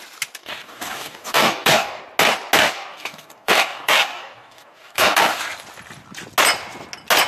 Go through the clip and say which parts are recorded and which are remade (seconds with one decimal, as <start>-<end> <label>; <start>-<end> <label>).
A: 0.0-0.4 recorded; 0.4-2.0 remade; 2.0-2.6 recorded; 2.6-5.4 remade; 5.4-7.3 recorded